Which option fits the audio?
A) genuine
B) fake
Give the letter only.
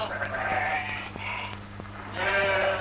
A